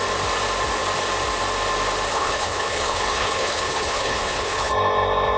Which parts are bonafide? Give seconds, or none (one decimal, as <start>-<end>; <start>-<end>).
0.0-2.1; 4.7-5.4